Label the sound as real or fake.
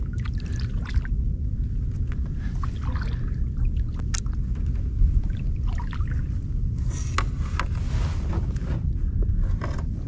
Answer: real